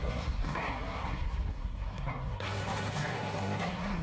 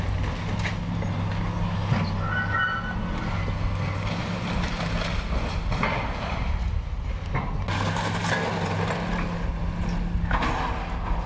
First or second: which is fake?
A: first